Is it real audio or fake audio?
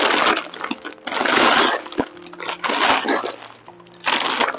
real